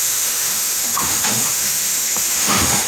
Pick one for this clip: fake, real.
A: fake